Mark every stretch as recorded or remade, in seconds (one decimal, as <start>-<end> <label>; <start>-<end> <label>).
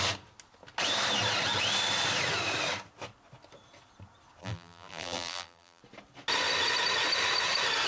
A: 0.0-4.4 recorded; 4.4-5.8 remade; 5.8-7.9 recorded